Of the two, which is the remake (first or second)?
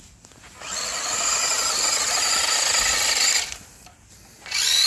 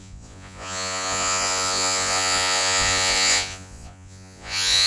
second